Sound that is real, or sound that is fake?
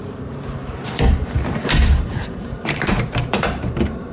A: fake